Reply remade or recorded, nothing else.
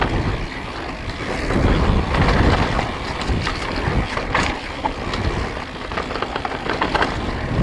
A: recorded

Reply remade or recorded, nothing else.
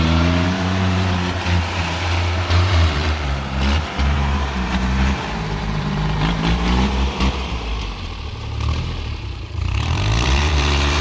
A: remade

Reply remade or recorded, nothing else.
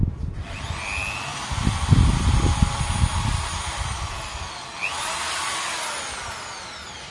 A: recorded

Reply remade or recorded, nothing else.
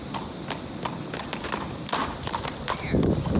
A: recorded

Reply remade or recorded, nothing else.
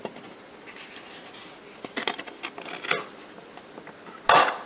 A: recorded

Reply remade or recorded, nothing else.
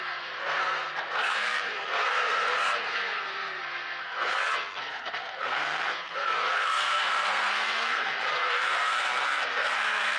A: remade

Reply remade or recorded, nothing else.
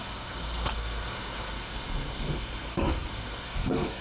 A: remade